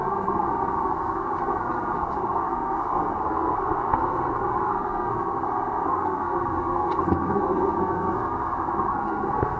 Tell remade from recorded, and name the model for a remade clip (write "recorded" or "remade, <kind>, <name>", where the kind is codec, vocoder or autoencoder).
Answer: remade, codec, SNAC